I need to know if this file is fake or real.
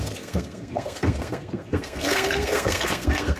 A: fake